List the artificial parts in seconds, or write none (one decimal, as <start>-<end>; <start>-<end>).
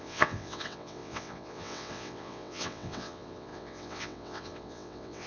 0.0-5.3